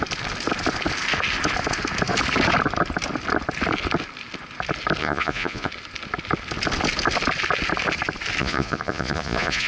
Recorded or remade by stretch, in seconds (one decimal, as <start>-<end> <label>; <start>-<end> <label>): 0.0-5.0 recorded; 5.0-5.7 remade; 5.7-8.4 recorded; 8.4-9.7 remade